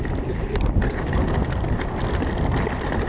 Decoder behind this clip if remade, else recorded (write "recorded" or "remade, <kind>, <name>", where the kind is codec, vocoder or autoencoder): recorded